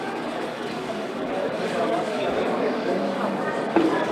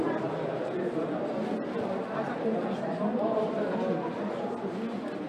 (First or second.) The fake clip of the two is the first